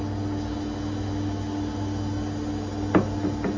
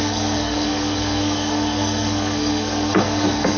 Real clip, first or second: first